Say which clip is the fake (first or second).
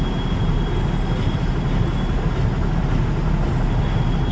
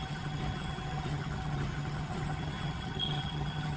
second